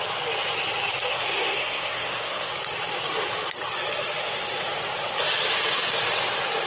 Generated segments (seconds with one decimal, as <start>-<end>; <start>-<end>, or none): 1.1-2.5